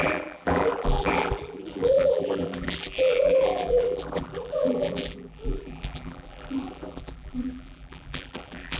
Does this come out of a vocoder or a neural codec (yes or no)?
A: yes